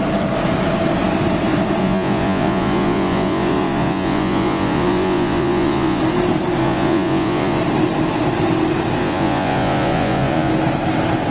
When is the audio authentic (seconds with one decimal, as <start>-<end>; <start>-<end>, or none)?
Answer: 0.0-1.8; 6.0-6.6; 7.6-9.0; 10.5-11.3